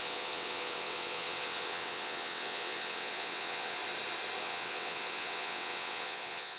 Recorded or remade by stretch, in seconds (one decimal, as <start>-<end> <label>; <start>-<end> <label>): 0.0-3.8 remade; 3.8-4.4 recorded; 4.4-6.6 remade